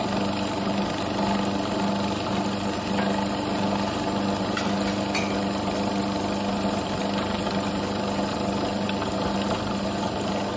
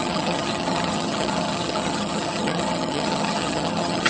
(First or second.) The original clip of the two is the first